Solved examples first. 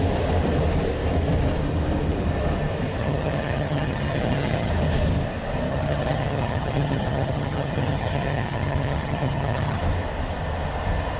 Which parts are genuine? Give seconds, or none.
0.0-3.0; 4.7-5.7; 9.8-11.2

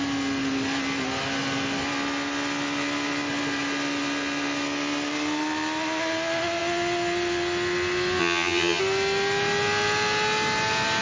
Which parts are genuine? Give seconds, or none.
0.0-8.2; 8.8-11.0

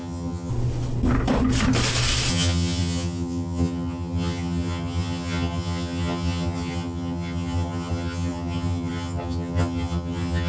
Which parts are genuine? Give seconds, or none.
0.5-2.3